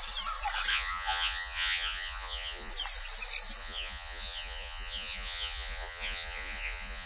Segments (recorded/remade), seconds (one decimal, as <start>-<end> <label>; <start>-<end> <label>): 0.0-0.7 recorded; 0.7-2.7 remade; 2.7-3.6 recorded; 3.6-7.1 remade